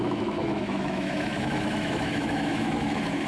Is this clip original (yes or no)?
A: no